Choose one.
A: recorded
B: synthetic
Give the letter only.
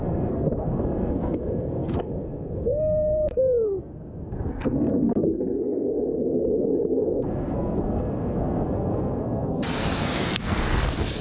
B